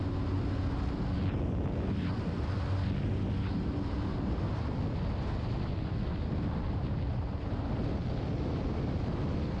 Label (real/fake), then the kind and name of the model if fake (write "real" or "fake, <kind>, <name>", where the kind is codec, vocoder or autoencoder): real